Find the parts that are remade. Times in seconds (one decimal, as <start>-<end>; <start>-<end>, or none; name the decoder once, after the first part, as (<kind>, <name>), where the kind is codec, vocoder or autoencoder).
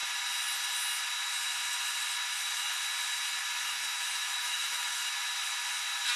3.7-5.0 (autoencoder, DAC-VAE)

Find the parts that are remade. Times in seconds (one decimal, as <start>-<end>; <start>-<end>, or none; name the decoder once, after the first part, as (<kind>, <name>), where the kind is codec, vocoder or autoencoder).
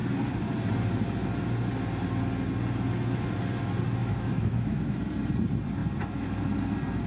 4.0-5.0 (autoencoder, DAC-VAE)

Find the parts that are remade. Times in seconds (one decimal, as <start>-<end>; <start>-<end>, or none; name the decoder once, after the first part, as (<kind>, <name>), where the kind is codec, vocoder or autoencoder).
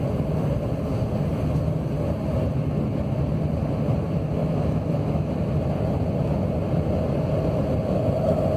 4.4-5.3 (autoencoder, DAC-VAE)